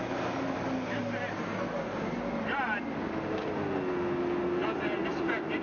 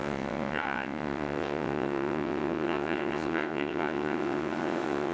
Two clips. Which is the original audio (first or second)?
first